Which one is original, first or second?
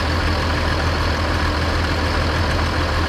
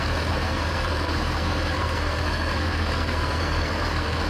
first